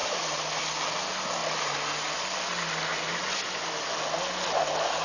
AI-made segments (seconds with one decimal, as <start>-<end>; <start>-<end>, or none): none